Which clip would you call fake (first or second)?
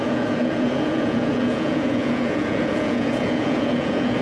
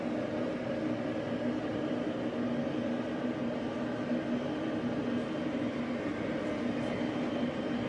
first